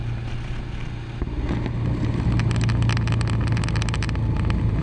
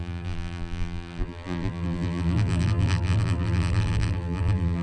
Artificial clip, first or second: second